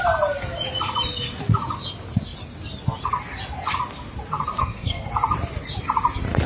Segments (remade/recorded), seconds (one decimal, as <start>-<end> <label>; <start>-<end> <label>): 0.0-4.6 recorded; 4.6-5.1 remade; 5.1-6.5 recorded